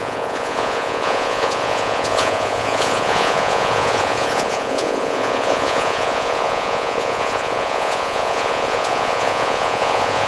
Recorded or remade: remade